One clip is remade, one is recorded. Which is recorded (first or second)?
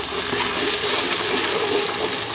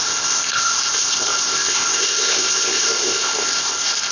first